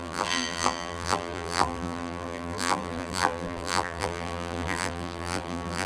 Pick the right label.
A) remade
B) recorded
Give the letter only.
A